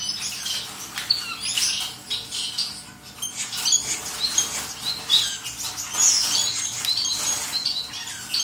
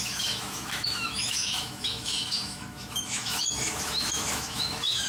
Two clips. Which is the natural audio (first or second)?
first